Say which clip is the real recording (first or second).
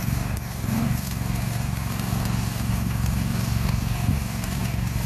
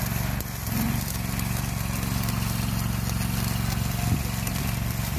second